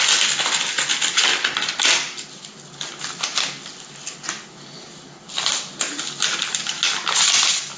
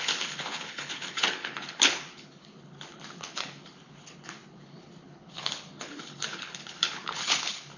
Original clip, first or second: first